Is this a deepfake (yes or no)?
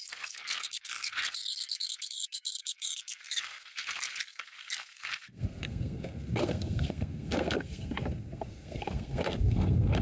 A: yes